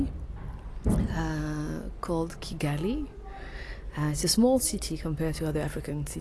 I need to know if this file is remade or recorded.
recorded